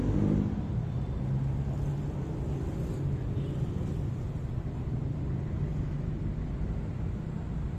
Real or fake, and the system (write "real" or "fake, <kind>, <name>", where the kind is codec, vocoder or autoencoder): real